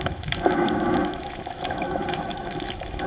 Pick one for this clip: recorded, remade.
remade